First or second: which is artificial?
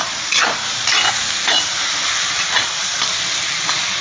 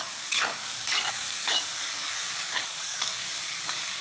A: second